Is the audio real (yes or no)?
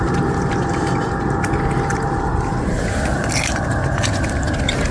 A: yes